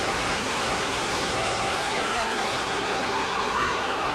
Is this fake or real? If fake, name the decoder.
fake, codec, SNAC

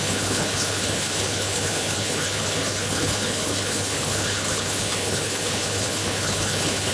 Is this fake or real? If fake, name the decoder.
fake, codec, HILCodec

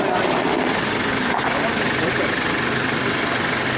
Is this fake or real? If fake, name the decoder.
real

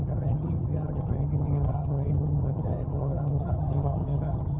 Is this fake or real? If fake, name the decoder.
fake, vocoder, HiFi-GAN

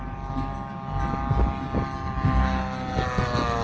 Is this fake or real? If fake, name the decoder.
real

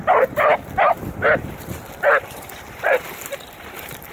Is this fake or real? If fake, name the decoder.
real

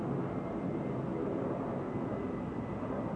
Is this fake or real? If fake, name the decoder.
real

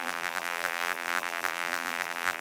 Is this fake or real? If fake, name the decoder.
fake, vocoder, BigVGAN v2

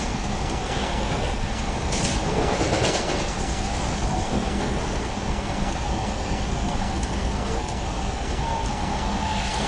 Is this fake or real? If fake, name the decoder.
fake, codec, SNAC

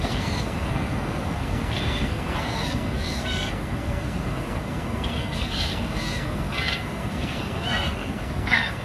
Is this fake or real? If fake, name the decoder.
fake, codec, SNAC